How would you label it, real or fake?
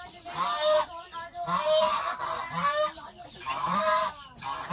real